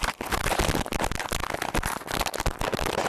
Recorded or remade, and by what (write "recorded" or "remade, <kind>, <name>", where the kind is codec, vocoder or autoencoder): recorded